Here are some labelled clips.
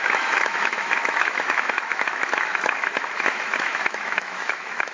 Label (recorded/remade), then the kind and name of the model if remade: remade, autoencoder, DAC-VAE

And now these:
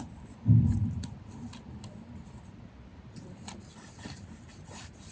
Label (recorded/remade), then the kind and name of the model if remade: recorded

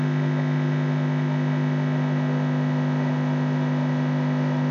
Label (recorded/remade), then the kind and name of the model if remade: remade, autoencoder, DAC-VAE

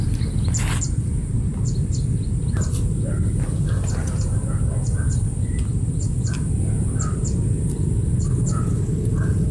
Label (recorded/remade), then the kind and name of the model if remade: recorded